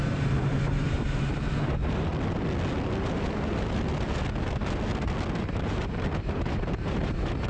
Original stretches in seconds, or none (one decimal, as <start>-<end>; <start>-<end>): 2.1-5.4